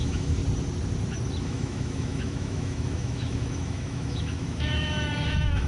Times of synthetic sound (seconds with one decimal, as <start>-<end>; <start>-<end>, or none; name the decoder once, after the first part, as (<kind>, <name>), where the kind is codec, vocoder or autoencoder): 0.0-0.4 (autoencoder, DAC-VAE); 1.4-5.7